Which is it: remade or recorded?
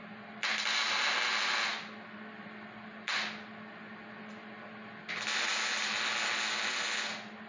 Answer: recorded